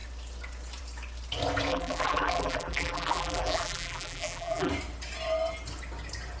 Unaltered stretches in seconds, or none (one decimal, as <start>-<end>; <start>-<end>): 0.0-1.7; 4.7-6.4